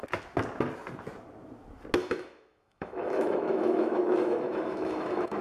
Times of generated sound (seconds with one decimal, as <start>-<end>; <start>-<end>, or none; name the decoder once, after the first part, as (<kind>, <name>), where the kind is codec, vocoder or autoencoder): 2.0-5.4 (autoencoder, DAC-VAE)